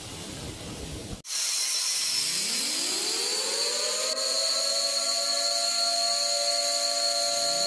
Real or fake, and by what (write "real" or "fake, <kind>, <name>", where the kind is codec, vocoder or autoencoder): real